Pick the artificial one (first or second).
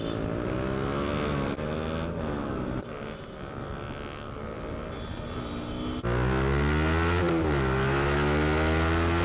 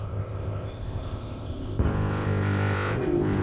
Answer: second